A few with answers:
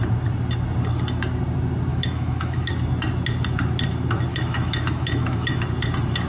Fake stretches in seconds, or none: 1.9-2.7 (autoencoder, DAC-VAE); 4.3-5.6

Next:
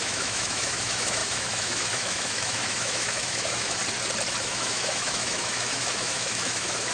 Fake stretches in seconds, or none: 0.0-3.8 (autoencoder, DAC-VAE); 4.4-6.9

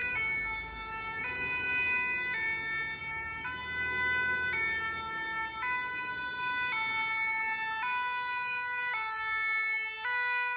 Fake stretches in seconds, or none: 0.0-1.2 (vocoder, BigVGAN v2); 3.0-3.6

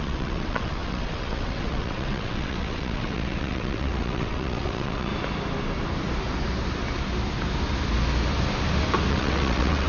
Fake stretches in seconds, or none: 0.0-5.1 (vocoder, WaveNeXt); 9.1-9.9

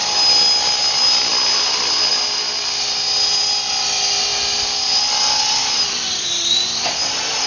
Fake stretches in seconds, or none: none

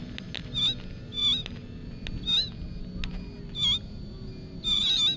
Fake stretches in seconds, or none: none

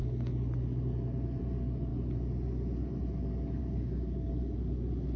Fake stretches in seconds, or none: 3.6-4.3 (codec, DAC)

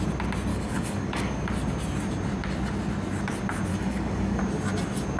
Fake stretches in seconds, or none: 0.5-1.5 (codec, DAC); 3.7-4.4